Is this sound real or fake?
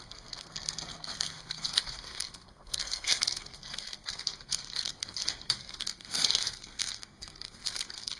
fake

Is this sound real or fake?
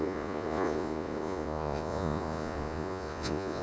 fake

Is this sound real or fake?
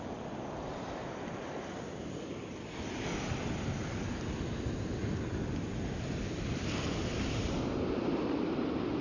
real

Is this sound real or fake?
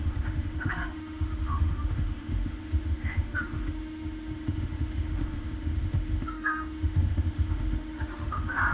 fake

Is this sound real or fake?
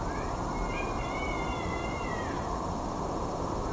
real